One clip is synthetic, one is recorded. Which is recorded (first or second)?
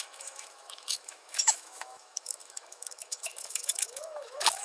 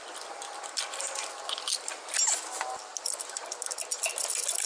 second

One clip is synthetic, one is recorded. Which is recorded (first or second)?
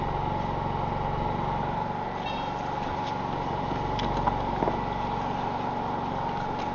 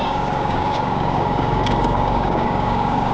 first